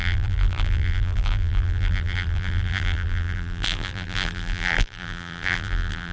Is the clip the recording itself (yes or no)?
no